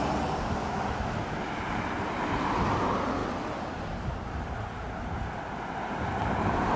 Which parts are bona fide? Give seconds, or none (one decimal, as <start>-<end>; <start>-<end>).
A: 0.0-0.6; 1.2-6.8